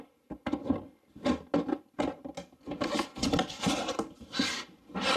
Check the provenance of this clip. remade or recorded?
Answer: recorded